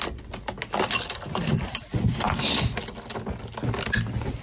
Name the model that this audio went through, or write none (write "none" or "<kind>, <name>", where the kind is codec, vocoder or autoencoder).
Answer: none